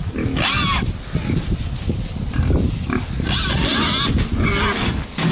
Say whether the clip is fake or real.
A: real